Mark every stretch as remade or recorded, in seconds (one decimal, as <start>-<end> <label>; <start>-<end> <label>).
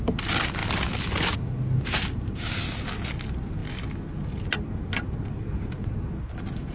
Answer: 0.0-6.7 recorded